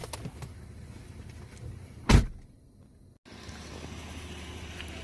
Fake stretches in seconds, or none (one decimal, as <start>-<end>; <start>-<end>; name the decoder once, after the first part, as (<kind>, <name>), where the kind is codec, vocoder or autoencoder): none